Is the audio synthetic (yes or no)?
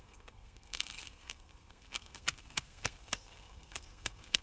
yes